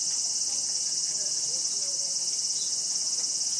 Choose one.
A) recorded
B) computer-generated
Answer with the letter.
A